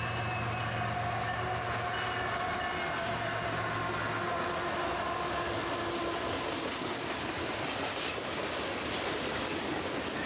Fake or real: real